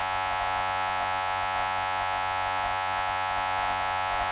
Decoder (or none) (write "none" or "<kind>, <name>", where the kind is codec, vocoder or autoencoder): vocoder, Vocos